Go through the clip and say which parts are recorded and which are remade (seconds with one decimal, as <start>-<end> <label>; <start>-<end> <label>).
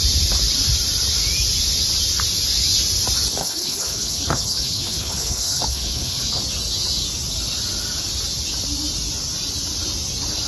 0.0-3.4 recorded; 3.4-6.4 remade; 6.4-10.5 recorded